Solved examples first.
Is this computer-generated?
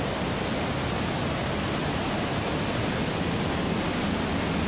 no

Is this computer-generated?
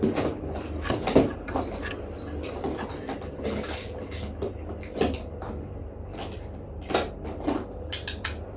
no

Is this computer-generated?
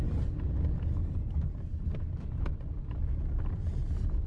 no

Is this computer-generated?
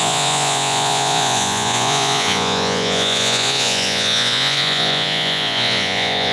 yes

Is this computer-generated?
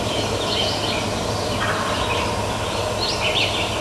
no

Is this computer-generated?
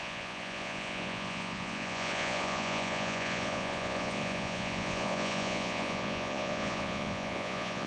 yes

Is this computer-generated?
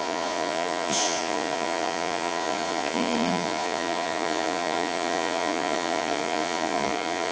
yes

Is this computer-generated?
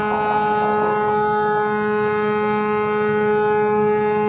no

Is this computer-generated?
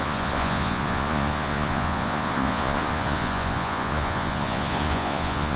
yes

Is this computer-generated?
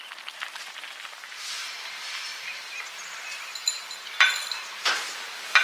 no